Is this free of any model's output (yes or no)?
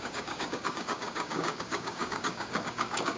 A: no